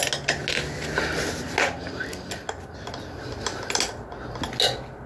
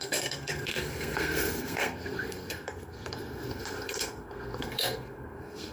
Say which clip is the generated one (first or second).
second